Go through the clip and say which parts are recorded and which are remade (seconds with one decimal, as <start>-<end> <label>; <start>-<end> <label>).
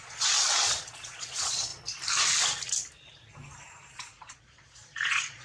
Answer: 0.0-1.7 remade; 1.7-3.9 recorded; 3.9-5.4 remade